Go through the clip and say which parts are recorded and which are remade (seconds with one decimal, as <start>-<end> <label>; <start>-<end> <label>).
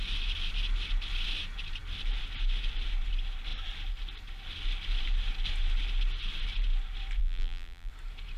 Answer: 0.0-7.2 recorded; 7.2-7.9 remade; 7.9-8.4 recorded